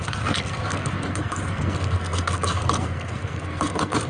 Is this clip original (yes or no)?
no